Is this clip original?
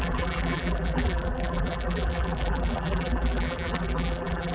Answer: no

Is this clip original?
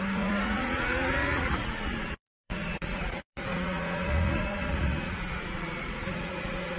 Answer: no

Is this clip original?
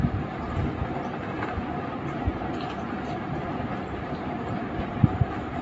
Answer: yes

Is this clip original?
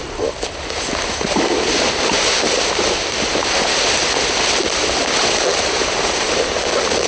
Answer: yes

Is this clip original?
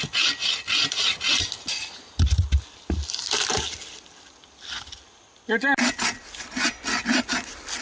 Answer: yes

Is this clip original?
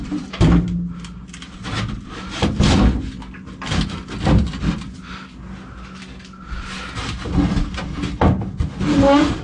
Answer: yes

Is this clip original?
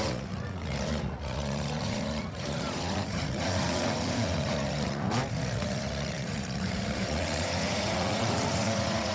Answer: no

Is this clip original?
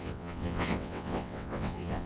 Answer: no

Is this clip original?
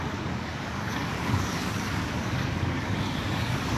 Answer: no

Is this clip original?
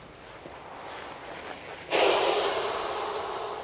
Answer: yes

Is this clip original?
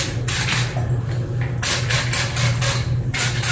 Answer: yes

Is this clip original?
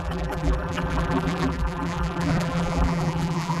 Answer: no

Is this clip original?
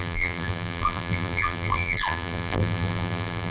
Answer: no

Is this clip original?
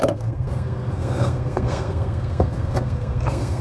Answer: no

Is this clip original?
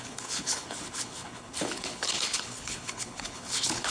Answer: no